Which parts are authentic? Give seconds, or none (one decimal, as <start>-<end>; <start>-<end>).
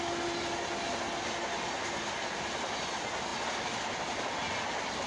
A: 0.0-5.1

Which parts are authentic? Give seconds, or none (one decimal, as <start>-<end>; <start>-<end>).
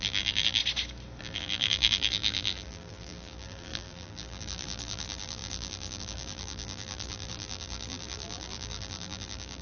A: 0.6-1.2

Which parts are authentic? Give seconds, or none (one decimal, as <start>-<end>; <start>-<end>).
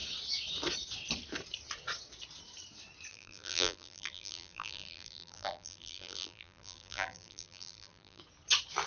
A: 0.0-3.1; 8.2-8.9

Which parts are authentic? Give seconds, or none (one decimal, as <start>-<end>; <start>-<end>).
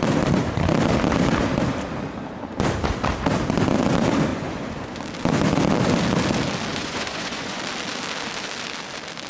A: 0.0-4.3; 5.0-6.7; 7.6-9.3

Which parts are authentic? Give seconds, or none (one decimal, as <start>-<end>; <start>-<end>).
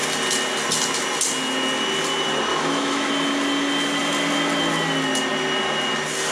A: 0.0-2.5; 3.1-6.3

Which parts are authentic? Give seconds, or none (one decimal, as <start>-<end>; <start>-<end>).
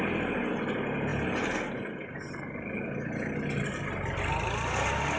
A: 0.0-5.2